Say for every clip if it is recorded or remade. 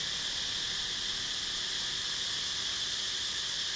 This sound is recorded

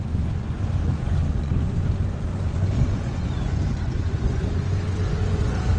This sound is remade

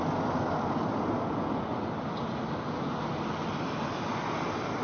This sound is recorded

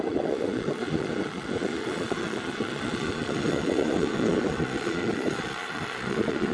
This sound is remade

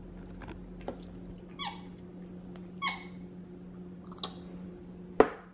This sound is recorded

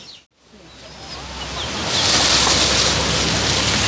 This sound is recorded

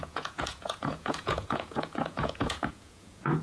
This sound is remade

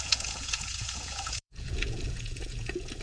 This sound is remade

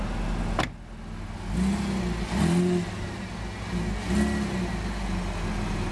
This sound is recorded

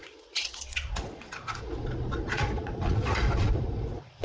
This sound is remade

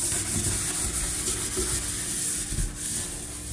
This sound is recorded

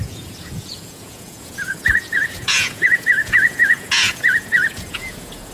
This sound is remade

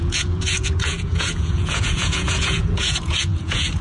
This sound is remade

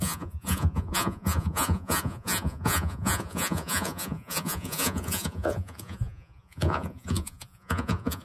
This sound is remade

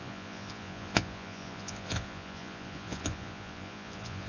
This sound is remade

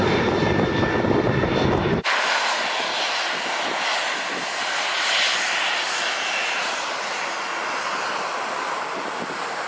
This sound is recorded